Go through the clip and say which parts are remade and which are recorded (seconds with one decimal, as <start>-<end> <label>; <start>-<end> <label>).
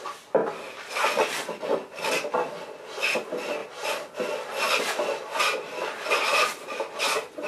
0.0-0.4 recorded; 0.4-2.1 remade; 2.1-6.3 recorded; 6.3-7.5 remade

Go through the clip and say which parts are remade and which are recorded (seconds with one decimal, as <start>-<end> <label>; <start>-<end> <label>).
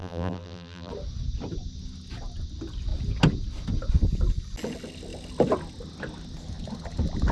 0.0-0.9 remade; 0.9-7.3 recorded